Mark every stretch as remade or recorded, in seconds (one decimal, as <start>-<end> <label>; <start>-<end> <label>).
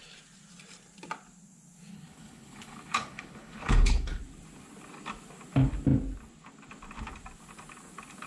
0.0-1.9 recorded; 1.9-4.2 remade; 4.2-8.3 recorded